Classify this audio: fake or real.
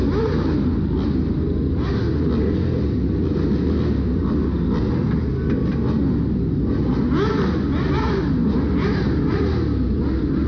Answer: real